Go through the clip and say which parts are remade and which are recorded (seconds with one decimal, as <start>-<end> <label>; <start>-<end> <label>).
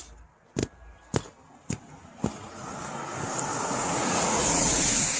0.0-3.5 recorded; 3.5-5.2 remade